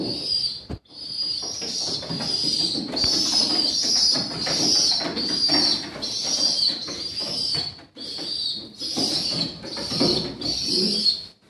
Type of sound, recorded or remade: recorded